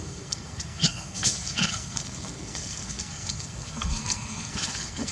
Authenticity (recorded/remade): remade